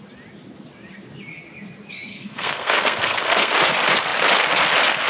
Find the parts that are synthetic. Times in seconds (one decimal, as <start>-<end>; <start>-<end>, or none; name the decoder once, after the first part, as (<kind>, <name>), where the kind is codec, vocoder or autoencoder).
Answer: 2.1-3.5 (codec, SNAC)